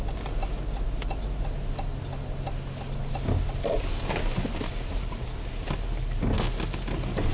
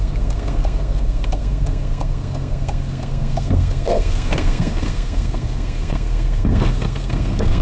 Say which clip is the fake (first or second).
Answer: second